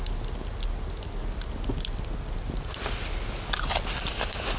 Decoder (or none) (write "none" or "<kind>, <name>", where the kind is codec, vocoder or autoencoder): none